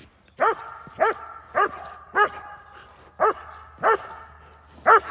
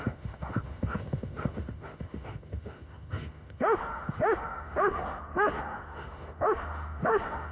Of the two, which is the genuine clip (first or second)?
first